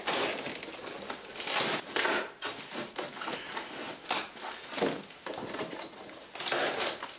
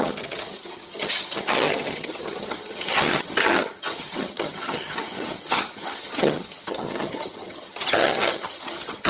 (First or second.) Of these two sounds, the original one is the first